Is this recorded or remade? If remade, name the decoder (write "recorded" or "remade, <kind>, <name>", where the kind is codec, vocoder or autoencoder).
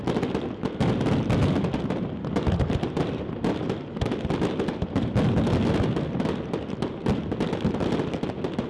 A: recorded